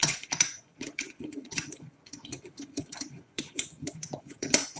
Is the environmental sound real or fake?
fake